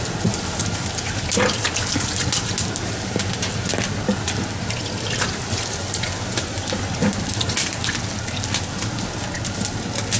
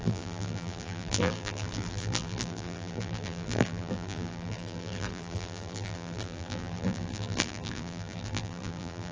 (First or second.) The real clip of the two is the first